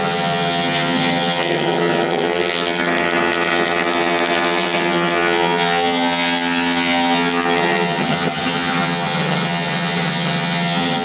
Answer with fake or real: fake